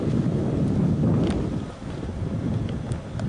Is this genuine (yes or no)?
yes